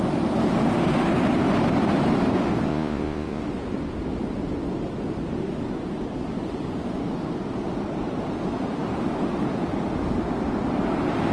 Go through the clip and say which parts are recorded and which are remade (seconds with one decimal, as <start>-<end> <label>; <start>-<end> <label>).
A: 0.0-2.7 recorded; 2.7-3.4 remade; 3.4-11.3 recorded